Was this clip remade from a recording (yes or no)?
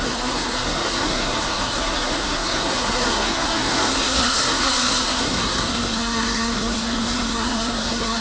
yes